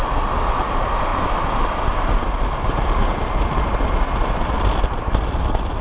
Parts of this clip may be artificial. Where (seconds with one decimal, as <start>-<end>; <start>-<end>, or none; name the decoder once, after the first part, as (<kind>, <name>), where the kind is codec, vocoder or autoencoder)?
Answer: none